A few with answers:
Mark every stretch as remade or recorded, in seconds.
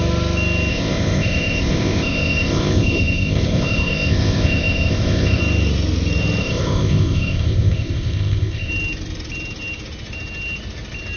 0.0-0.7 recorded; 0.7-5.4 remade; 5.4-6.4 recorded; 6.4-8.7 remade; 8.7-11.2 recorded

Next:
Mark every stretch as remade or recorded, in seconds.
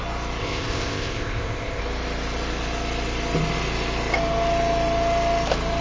0.0-0.4 recorded; 0.4-1.8 remade; 1.8-5.8 recorded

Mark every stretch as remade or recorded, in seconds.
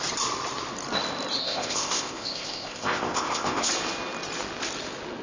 0.0-1.4 recorded; 1.4-3.7 remade; 3.7-5.2 recorded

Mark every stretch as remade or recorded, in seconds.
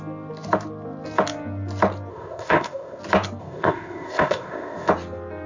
0.0-2.1 recorded; 2.1-3.0 remade; 3.0-3.4 recorded; 3.4-4.9 remade; 4.9-5.5 recorded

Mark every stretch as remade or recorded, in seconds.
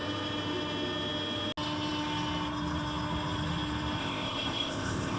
0.0-4.0 recorded; 4.0-5.2 remade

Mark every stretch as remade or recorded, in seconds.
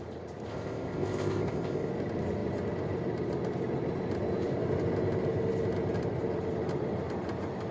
0.0-0.5 recorded; 0.5-1.9 remade; 1.9-7.7 recorded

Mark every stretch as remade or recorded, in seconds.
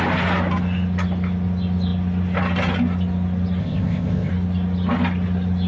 0.0-3.6 recorded; 3.6-4.3 remade; 4.3-5.7 recorded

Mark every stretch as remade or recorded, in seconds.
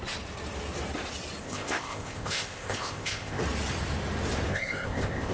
0.0-1.4 recorded; 1.4-3.4 remade; 3.4-4.5 recorded; 4.5-5.3 remade